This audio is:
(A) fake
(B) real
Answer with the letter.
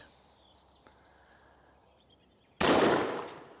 B